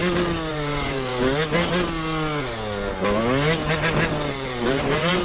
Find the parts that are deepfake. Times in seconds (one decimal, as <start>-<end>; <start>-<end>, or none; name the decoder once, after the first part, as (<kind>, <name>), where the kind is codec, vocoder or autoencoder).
0.5-1.1 (vocoder, BigVGAN v2); 4.2-5.2